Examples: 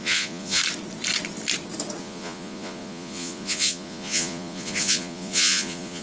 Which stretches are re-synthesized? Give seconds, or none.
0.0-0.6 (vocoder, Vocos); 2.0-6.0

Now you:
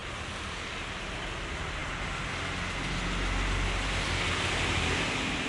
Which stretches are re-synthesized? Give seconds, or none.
0.0-0.8 (vocoder, BigVGAN v2)

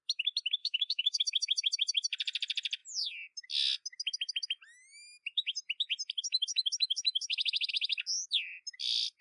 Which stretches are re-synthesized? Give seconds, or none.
0.6-1.2 (autoencoder, DAC-VAE)

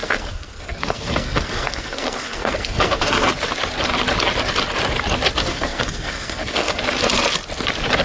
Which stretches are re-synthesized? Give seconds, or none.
0.0-3.3 (codec, SNAC); 5.4-6.8

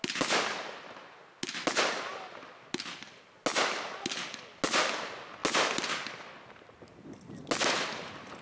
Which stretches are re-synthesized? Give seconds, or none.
none

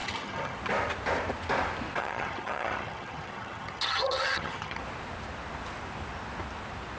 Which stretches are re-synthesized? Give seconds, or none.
0.0-0.6 (vocoder, HiFi-GAN); 2.0-4.8

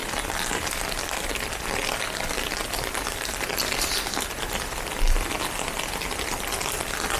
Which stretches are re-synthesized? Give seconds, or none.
none